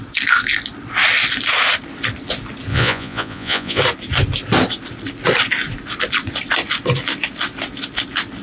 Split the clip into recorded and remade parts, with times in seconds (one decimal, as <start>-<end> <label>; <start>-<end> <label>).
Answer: 0.0-2.7 recorded; 2.7-3.8 remade; 3.8-8.4 recorded